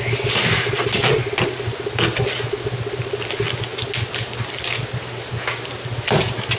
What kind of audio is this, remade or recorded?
recorded